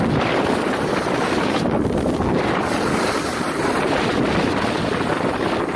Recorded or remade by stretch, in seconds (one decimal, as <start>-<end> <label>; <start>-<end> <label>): 0.0-3.3 recorded; 3.3-4.1 remade; 4.1-5.8 recorded